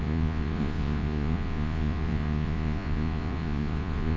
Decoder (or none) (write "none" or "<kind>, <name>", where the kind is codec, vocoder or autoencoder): vocoder, Vocos